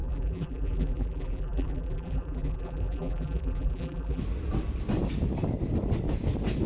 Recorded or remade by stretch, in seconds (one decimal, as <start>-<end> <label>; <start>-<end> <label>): 0.0-4.2 remade; 4.2-6.7 recorded